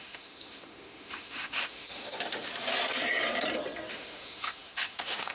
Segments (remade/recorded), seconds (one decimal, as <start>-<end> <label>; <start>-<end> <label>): 0.0-2.5 remade; 2.5-3.9 recorded; 3.9-5.3 remade